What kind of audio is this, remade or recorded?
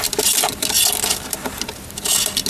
recorded